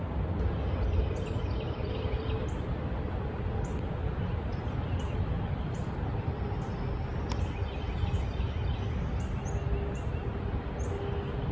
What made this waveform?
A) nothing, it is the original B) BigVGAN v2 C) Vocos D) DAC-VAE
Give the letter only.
A